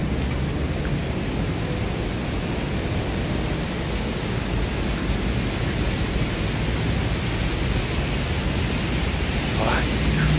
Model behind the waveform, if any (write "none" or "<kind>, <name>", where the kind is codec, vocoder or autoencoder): none